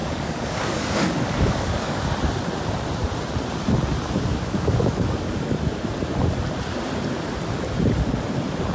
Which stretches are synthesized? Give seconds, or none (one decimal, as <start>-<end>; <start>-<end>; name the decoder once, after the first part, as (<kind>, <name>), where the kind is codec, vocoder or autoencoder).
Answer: 0.0-2.0 (codec, DAC); 4.3-5.6